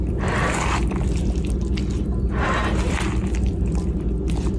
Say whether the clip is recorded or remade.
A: recorded